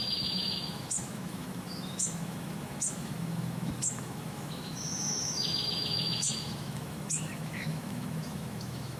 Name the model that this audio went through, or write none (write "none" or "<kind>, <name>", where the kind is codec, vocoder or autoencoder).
autoencoder, DAC-VAE